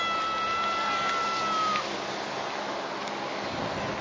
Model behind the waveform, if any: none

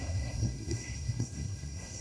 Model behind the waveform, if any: codec, SNAC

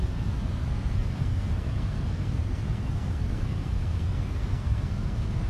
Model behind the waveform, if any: codec, SNAC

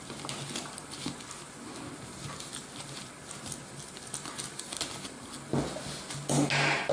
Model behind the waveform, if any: none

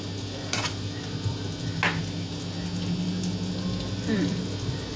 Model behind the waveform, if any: none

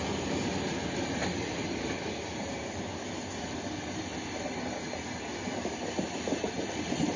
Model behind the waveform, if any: none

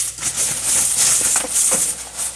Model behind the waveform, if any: none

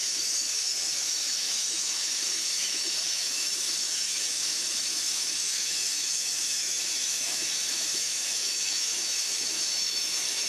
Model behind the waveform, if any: autoencoder, DAC-VAE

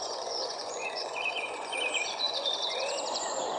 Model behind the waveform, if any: vocoder, Vocos